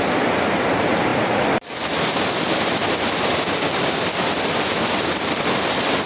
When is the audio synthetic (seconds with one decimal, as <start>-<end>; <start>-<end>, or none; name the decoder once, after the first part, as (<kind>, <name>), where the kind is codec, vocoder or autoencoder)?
1.1-4.8 (vocoder, BigVGAN v2)